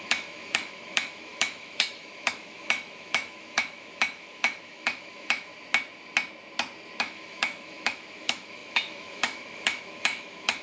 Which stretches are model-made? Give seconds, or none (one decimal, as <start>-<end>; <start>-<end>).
0.0-5.5; 7.0-10.6